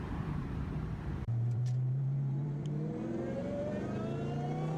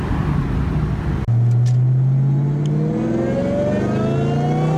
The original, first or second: second